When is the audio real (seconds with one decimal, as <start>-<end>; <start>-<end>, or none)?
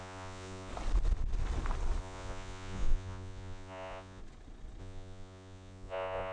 0.7-2.0; 4.2-4.8